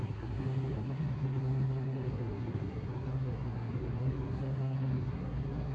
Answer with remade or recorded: remade